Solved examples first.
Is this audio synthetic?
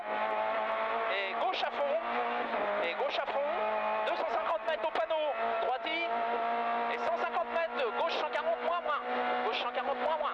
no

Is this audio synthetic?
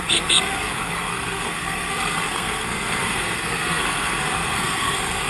yes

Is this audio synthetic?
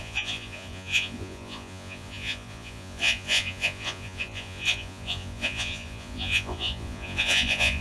yes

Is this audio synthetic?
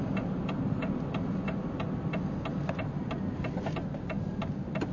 no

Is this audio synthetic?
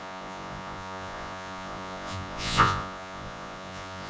yes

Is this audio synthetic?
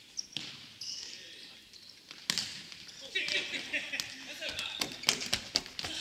no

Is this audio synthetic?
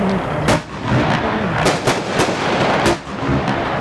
no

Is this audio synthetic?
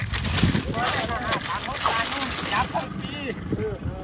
no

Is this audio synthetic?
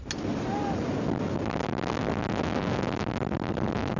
no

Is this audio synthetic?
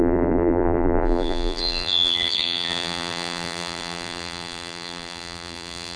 yes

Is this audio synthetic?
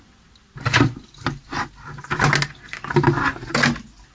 no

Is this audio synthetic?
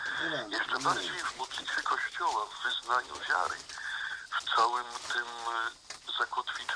no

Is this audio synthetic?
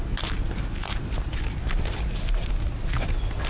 no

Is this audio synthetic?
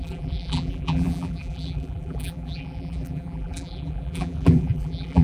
yes